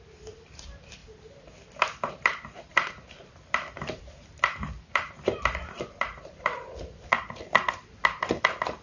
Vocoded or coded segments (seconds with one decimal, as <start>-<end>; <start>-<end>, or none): 0.0-1.0; 2.1-8.8